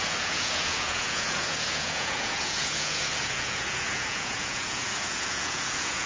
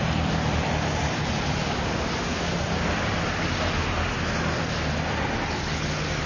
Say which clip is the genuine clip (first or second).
second